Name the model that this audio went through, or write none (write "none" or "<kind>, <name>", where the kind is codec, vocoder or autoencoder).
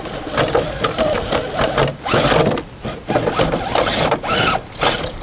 none